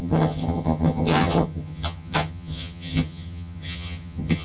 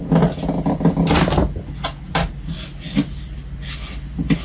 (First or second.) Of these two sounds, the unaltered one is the second